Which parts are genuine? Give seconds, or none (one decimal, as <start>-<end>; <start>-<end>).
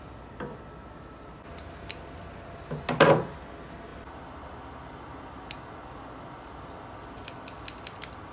0.0-8.3